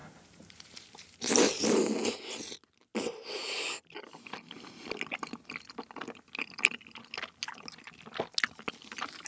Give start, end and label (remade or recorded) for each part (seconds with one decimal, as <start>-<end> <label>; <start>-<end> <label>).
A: 0.0-1.3 remade; 1.3-9.3 recorded